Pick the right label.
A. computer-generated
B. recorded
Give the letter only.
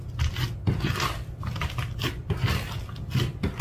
B